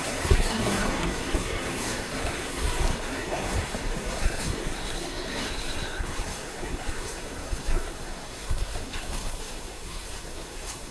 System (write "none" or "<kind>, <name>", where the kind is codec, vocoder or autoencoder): codec, SNAC